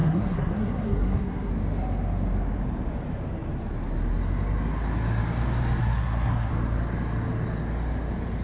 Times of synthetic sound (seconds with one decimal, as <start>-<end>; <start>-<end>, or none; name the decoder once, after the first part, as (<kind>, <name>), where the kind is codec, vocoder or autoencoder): 0.0-1.5 (codec, SNAC); 5.8-6.5